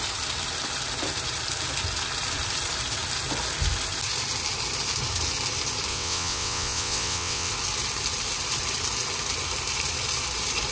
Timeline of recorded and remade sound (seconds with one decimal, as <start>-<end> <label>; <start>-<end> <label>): 0.0-5.9 recorded; 5.9-7.5 remade; 7.5-10.7 recorded